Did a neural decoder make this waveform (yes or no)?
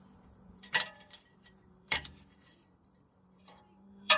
yes